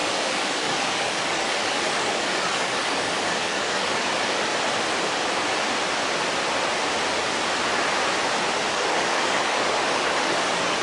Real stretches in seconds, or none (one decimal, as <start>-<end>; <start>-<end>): 4.5-8.7